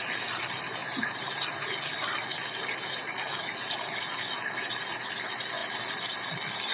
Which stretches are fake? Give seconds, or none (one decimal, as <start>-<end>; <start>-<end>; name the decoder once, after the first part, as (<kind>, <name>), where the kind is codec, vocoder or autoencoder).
0.8-1.4 (vocoder, BigVGAN v2); 3.3-4.0